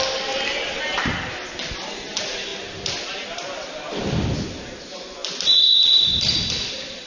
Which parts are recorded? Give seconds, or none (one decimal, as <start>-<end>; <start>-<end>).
0.0-7.1